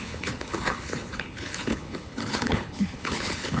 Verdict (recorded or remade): remade